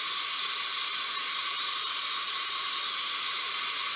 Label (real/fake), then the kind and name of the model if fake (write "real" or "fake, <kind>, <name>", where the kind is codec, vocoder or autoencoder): fake, vocoder, BigVGAN v2